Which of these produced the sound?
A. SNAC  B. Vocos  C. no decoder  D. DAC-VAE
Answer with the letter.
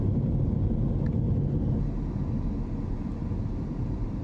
C